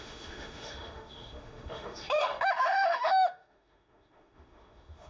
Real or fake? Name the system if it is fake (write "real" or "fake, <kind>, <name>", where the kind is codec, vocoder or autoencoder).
fake, autoencoder, DAC-VAE